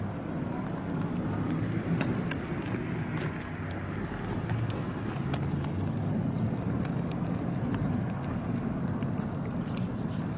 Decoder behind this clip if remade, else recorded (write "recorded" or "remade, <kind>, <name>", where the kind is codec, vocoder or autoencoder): recorded